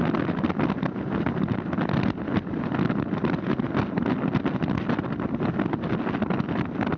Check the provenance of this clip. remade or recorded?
recorded